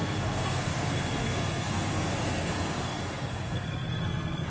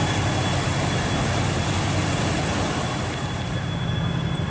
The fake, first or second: first